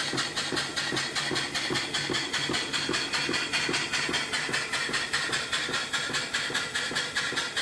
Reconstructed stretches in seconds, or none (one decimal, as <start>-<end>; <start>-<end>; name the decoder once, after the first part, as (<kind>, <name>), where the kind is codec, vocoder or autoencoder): none